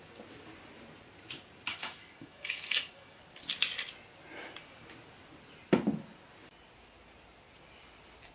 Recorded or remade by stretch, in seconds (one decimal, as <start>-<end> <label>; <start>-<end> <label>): 0.0-1.7 recorded; 1.7-3.2 remade; 3.2-8.3 recorded